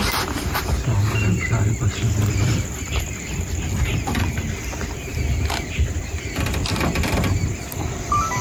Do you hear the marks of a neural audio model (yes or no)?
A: yes